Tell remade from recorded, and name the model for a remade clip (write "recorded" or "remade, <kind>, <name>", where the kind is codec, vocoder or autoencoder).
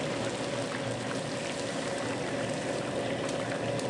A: recorded